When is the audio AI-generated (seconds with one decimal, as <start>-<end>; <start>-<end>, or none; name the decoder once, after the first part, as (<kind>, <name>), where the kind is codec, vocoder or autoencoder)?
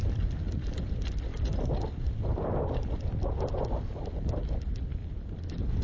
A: none